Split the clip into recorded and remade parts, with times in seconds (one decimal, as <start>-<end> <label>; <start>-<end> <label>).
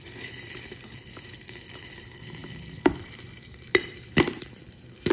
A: 0.0-2.4 remade; 2.4-2.9 recorded; 2.9-5.1 remade